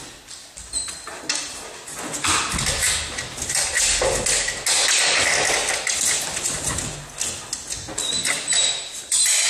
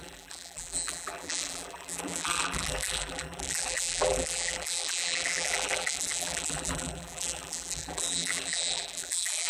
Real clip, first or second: first